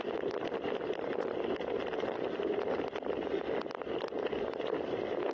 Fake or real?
real